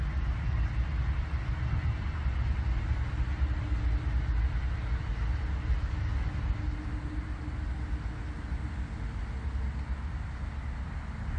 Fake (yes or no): no